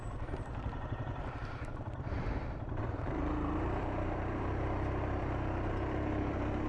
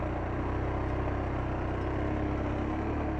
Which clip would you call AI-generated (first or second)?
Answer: first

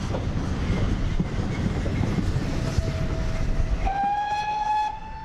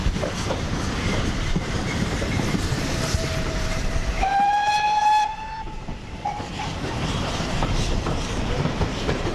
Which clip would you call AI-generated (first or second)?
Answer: second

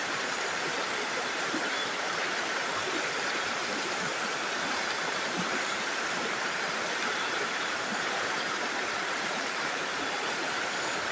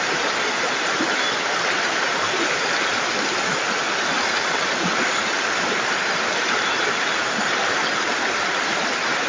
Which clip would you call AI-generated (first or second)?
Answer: first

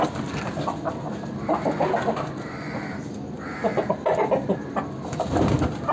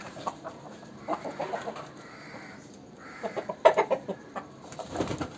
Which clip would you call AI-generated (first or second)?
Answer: second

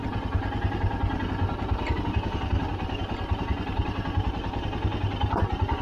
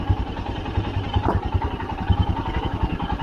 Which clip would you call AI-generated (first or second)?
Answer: second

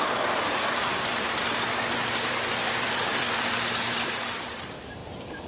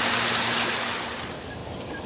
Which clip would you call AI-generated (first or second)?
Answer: first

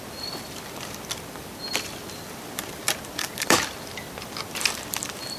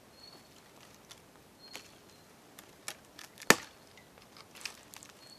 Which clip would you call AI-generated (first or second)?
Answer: first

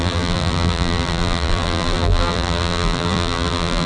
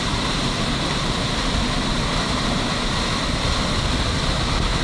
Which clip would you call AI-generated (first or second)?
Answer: first